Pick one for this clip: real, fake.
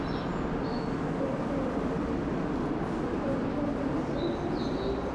real